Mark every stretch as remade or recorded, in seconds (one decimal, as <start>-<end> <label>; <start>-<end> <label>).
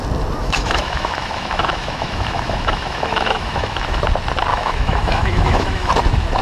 0.0-0.4 recorded; 0.4-4.0 remade; 4.0-4.5 recorded; 4.5-5.9 remade; 5.9-6.4 recorded